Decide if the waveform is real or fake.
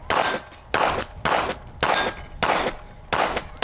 real